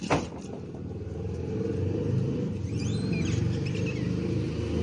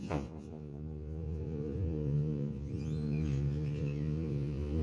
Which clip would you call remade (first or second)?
second